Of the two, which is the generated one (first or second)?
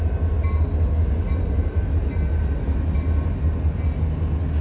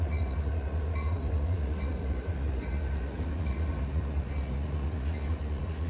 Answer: second